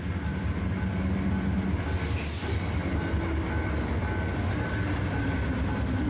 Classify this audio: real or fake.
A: real